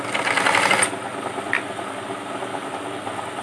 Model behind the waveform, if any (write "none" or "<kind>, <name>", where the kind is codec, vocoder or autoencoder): none